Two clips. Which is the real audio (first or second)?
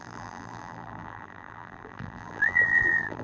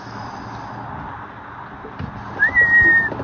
second